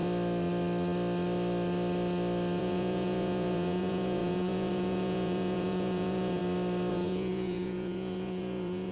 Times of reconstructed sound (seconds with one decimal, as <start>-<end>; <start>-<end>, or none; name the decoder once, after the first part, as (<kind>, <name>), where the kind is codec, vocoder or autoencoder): 2.6-6.4 (vocoder, Vocos); 6.9-8.9